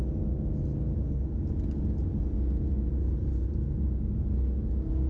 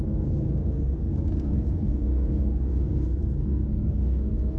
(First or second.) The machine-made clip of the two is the second